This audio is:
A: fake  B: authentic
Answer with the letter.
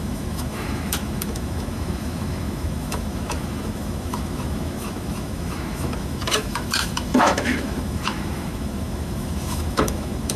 A